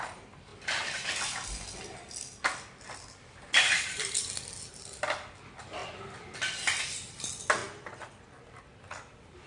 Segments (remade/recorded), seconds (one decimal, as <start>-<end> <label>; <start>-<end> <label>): 0.0-9.5 recorded